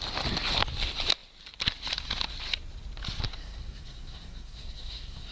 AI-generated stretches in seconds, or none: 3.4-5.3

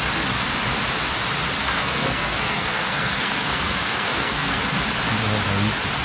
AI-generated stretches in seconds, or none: 1.6-4.6